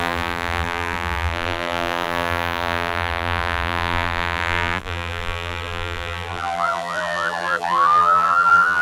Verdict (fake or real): fake